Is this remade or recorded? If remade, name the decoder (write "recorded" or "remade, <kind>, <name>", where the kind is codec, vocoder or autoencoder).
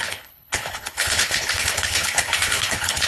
remade, codec, HILCodec